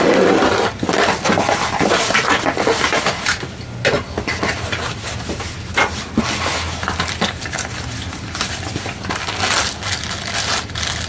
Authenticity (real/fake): real